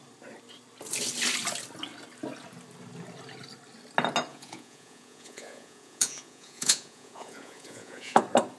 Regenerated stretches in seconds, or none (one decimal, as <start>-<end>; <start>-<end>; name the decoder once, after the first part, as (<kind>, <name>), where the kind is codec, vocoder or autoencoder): 4.3-8.2 (vocoder, Vocos)